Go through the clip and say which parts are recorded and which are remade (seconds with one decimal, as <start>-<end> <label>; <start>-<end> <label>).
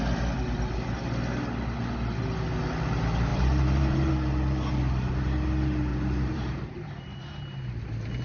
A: 0.0-3.3 recorded; 3.3-4.1 remade; 4.1-5.9 recorded; 5.9-7.2 remade; 7.2-8.2 recorded